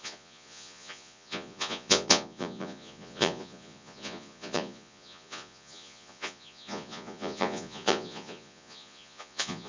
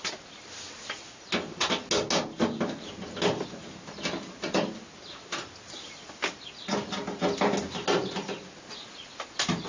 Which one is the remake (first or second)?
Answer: first